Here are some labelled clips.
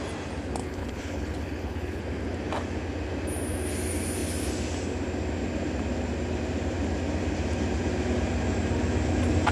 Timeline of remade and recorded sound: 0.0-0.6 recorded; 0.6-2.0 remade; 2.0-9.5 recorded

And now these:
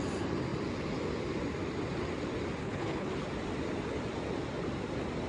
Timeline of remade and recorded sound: 0.0-2.6 recorded; 2.6-3.1 remade; 3.1-5.3 recorded